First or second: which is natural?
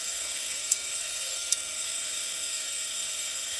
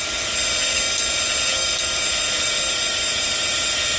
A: second